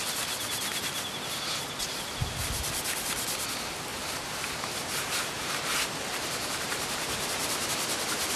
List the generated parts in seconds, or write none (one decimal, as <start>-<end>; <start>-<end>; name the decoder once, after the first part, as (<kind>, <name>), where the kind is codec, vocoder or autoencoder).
3.9-7.7 (vocoder, BigVGAN v2)